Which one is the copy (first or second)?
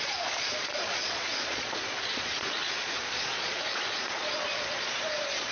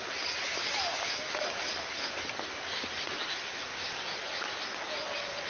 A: first